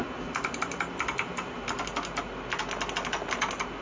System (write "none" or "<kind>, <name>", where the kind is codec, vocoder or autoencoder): none